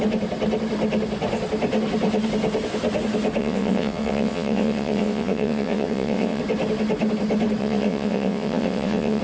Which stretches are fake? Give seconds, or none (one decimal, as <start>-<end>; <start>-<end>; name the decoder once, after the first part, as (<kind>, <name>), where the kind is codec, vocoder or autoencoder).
3.4-6.4 (vocoder, WaveNeXt); 7.6-9.2